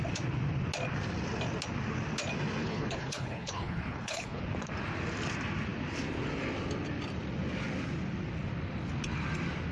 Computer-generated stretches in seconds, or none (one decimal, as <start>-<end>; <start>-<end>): 2.6-4.4